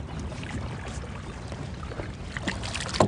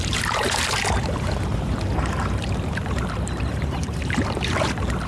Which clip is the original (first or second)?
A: first